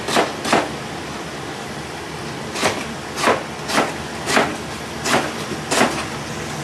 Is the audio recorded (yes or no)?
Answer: yes